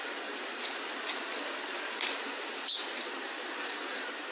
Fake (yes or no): no